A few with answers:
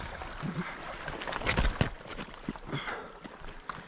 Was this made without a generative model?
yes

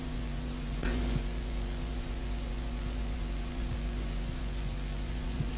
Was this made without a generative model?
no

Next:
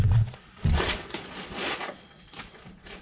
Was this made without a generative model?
no